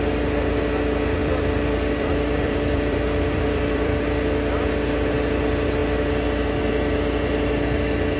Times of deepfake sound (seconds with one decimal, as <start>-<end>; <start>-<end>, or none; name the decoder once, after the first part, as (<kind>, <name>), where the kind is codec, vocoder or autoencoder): 1.2-4.0 (vocoder, BigVGAN v2)